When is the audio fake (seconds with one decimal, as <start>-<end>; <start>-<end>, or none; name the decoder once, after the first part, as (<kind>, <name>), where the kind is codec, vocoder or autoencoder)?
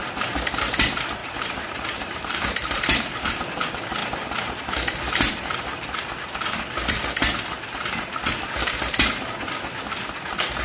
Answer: 1.2-3.1 (vocoder, BigVGAN v2); 4.0-5.4